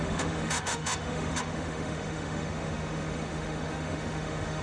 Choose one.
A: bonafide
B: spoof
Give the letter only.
B